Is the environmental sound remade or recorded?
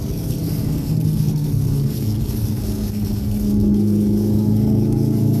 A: remade